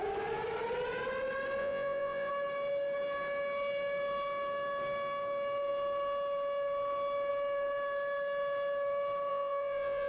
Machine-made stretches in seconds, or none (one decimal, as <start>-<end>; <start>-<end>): 1.6-2.3; 9.3-10.1